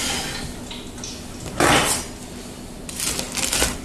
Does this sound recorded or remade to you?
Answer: recorded